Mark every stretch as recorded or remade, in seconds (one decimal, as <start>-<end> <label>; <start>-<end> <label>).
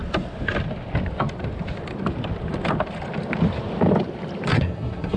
0.0-4.5 recorded; 4.5-5.2 remade